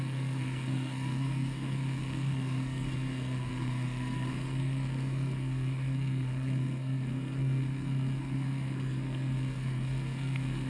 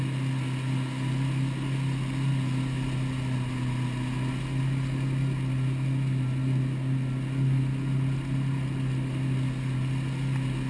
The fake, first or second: first